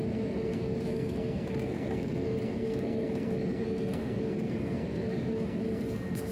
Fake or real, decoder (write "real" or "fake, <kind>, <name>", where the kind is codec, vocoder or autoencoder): fake, codec, SNAC